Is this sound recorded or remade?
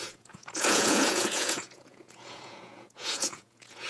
remade